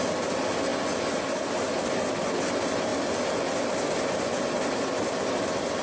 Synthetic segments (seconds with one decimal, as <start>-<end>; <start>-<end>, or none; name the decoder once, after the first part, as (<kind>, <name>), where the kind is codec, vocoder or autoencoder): none